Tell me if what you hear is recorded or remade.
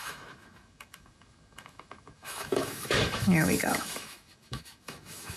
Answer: remade